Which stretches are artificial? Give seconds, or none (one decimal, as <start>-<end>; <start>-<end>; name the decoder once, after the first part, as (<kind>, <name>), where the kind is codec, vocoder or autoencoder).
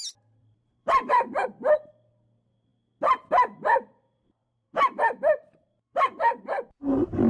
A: 0.4-1.9 (vocoder, BigVGAN v2); 4.4-7.3